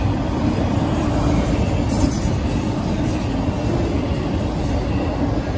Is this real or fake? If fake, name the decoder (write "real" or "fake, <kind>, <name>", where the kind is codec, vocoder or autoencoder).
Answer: real